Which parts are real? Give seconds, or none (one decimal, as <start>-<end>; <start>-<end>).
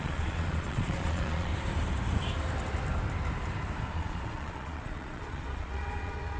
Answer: 1.5-3.9